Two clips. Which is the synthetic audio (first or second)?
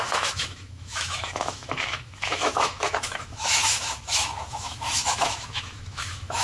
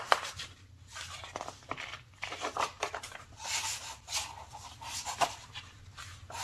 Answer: first